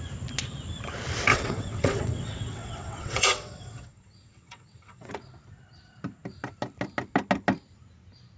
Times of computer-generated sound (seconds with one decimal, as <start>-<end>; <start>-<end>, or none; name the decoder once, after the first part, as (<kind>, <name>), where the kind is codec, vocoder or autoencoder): 1.3-5.1 (vocoder, WaveNeXt)